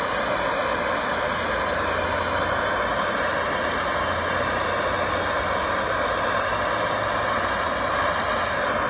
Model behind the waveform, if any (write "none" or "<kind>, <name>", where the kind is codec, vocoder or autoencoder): none